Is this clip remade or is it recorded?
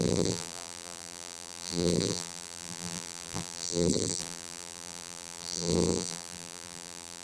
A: remade